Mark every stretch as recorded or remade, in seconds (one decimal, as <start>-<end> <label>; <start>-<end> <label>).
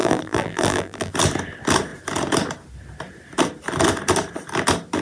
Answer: 0.0-1.1 remade; 1.1-5.0 recorded